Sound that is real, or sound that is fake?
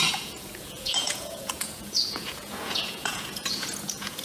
fake